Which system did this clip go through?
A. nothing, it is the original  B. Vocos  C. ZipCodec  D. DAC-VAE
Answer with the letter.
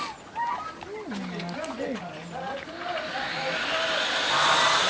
A